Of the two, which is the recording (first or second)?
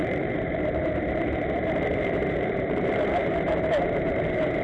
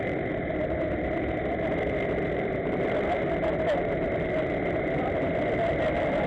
second